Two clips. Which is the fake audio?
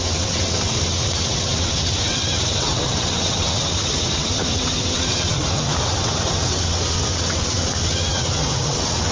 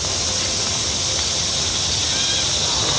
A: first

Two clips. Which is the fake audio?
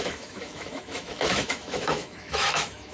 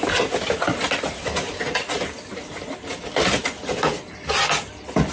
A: first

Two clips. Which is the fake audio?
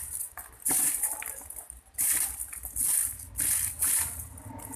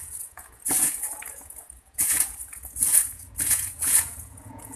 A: second